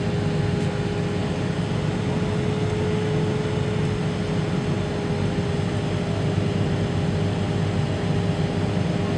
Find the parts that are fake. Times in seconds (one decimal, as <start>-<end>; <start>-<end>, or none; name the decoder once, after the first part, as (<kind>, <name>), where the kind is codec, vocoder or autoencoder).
none